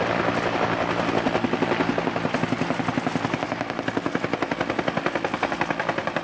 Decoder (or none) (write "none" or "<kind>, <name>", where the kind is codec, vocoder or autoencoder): none